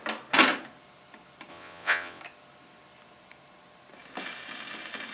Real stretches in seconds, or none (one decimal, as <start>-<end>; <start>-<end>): 0.0-1.5; 2.2-5.1